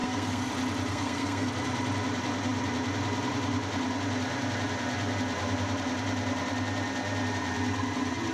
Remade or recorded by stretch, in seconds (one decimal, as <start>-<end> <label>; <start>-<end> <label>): 0.0-0.5 remade; 0.5-0.9 recorded; 0.9-1.5 remade; 1.5-8.3 recorded